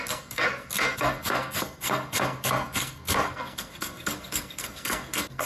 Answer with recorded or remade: remade